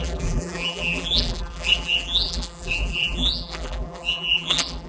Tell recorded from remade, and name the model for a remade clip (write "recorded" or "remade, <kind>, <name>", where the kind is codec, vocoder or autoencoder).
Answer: remade, vocoder, BigVGAN v2